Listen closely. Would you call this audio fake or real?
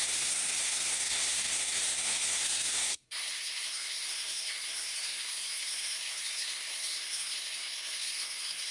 fake